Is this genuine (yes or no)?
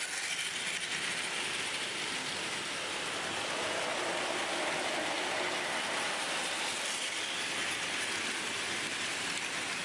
yes